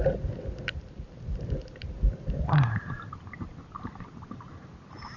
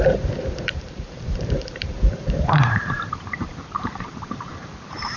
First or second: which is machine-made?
second